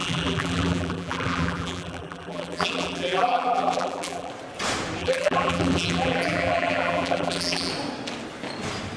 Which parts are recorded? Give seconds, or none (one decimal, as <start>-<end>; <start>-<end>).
4.3-5.0; 7.7-9.0